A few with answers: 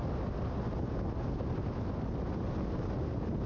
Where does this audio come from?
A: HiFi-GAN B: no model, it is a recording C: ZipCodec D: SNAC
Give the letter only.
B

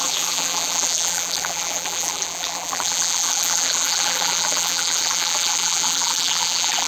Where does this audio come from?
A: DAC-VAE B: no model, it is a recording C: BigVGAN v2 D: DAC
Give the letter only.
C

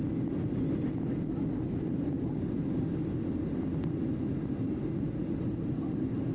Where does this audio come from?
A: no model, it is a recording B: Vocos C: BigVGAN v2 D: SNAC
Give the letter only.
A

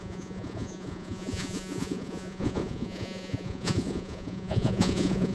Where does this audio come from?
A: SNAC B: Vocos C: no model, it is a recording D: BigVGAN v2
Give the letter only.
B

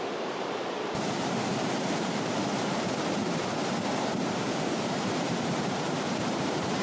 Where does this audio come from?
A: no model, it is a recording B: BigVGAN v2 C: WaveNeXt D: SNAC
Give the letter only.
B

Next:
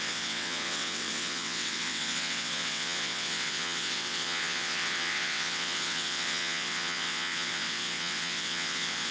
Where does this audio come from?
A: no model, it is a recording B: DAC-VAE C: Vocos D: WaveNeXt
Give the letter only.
D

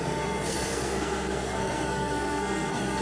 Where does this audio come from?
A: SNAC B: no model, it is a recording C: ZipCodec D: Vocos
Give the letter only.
A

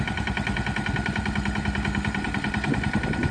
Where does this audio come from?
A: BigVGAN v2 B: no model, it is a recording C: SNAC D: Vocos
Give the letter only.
A